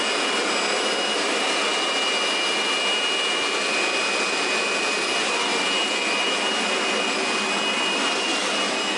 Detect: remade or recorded recorded